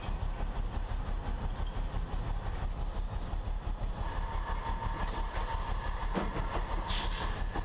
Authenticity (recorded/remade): recorded